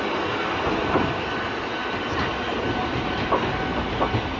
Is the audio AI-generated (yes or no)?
no